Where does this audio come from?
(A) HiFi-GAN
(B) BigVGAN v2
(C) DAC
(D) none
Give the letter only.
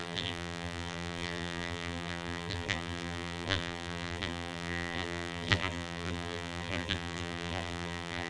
B